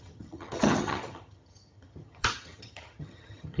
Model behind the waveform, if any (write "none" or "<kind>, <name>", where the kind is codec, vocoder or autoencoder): vocoder, HiFi-GAN